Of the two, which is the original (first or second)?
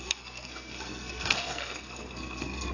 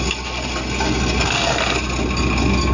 second